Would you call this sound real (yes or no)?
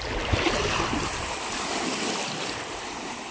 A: yes